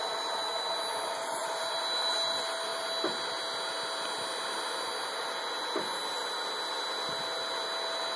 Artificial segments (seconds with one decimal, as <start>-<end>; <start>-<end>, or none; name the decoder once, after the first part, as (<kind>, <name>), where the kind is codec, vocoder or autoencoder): none